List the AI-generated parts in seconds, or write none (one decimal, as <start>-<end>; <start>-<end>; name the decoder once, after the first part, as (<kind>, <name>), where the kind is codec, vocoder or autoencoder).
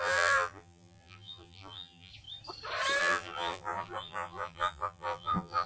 0.0-2.1 (vocoder, BigVGAN v2); 3.0-5.7